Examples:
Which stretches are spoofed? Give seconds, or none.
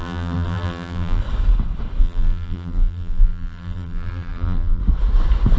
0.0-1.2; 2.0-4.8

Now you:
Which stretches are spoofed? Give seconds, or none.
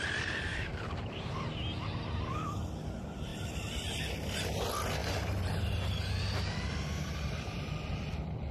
0.5-1.3; 5.0-7.7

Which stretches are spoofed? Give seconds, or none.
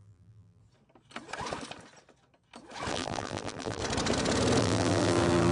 0.0-0.6; 2.9-3.8; 4.6-5.5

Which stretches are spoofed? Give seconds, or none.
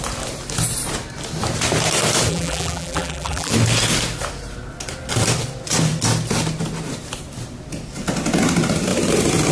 2.3-3.5